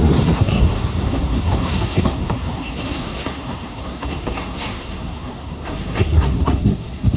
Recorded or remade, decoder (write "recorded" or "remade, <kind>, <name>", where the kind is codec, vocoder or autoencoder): remade, codec, SNAC